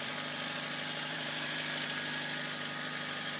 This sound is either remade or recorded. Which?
remade